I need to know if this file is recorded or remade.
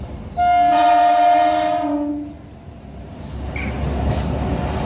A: recorded